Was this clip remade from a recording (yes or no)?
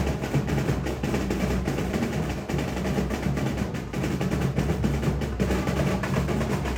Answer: yes